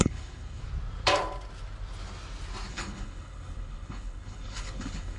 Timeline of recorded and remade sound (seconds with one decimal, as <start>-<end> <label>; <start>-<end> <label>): 0.0-0.6 remade; 0.6-2.7 recorded; 2.7-5.2 remade